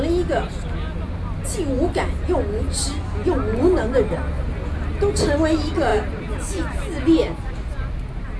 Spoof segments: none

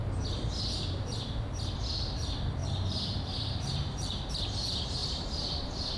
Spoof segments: 2.6-4.3 (vocoder, BigVGAN v2); 5.0-6.0

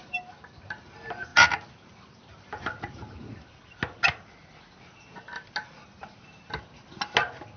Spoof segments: 1.3-3.2 (vocoder, BigVGAN v2)

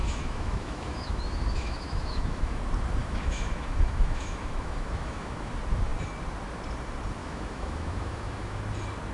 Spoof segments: 0.0-2.6 (autoencoder, DAC-VAE); 3.0-5.5; 7.2-8.6

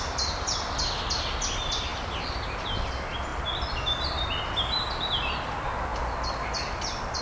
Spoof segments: none

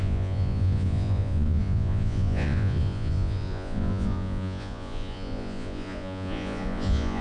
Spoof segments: 0.0-7.2 (vocoder, Vocos)